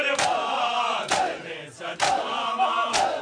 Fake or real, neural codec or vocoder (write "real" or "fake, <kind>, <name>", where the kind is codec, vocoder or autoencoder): real